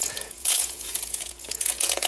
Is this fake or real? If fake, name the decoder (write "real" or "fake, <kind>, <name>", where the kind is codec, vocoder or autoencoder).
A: fake, vocoder, Vocos